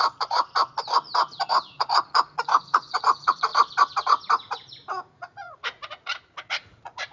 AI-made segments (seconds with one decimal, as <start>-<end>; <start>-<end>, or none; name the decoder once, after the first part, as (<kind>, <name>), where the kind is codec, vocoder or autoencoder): 0.0-0.6 (vocoder, Vocos); 1.5-3.5; 5.0-7.1